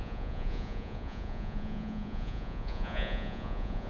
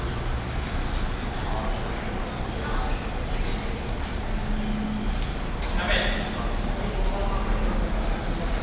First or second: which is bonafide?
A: second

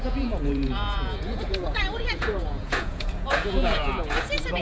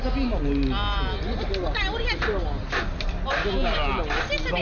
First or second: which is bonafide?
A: second